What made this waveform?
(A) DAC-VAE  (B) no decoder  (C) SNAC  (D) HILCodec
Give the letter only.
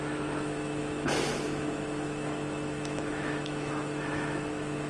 A